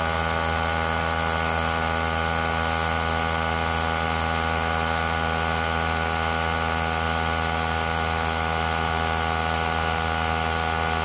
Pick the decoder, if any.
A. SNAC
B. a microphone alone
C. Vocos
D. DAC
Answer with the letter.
B